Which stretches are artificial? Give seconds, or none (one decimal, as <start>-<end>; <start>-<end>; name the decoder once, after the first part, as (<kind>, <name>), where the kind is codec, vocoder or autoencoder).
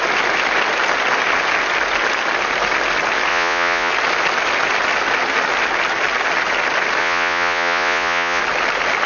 3.3-3.9 (vocoder, Vocos); 7.0-8.4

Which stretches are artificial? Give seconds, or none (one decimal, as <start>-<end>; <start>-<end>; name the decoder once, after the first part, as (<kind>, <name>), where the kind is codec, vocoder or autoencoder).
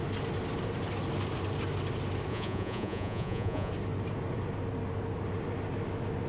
2.3-3.7 (vocoder, Vocos)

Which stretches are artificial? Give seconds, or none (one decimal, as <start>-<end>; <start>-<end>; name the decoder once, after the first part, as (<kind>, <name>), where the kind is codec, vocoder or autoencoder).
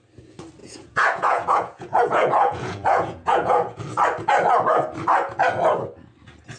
0.6-3.8 (vocoder, Vocos)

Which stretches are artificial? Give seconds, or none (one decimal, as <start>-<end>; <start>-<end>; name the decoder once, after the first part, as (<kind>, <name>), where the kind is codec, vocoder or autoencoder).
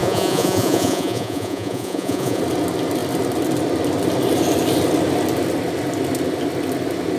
0.0-2.4 (vocoder, Vocos)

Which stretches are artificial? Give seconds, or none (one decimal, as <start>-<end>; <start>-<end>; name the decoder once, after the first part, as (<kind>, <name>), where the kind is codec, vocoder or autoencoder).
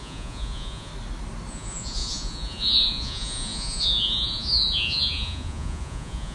0.0-0.9 (vocoder, Vocos); 1.5-6.3